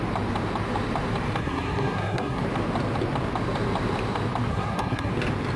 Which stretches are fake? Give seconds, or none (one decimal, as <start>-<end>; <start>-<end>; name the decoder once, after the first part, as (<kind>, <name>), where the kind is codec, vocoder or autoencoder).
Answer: 1.4-2.4 (codec, SNAC); 4.5-5.1